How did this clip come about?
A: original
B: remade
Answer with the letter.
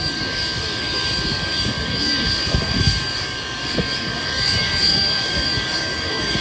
B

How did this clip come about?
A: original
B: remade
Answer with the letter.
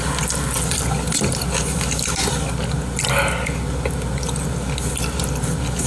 A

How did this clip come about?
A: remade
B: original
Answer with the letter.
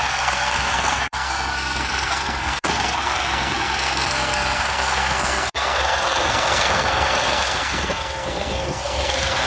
A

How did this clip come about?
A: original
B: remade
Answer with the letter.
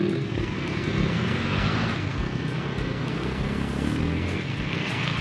B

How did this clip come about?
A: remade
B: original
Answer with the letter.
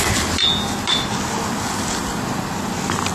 B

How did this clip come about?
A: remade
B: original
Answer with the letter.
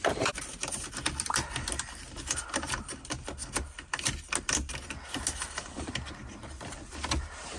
B